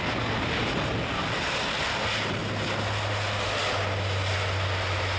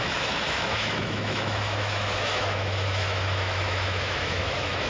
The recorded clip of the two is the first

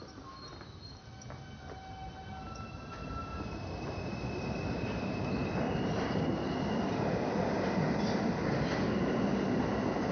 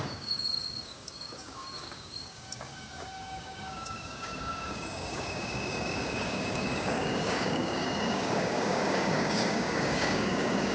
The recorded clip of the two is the first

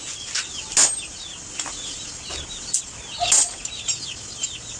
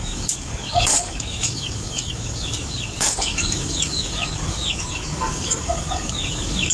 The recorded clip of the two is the first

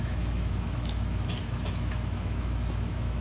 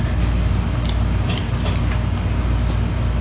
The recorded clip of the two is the second